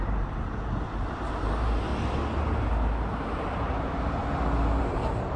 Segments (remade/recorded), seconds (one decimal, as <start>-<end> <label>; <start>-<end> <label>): 0.0-1.9 remade; 1.9-3.1 recorded; 3.1-4.2 remade; 4.2-4.8 recorded; 4.8-5.4 remade